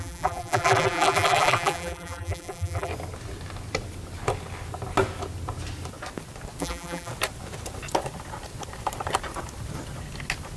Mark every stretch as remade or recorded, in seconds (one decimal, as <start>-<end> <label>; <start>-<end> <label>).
0.0-2.9 remade; 2.9-6.6 recorded; 6.6-7.1 remade; 7.1-10.6 recorded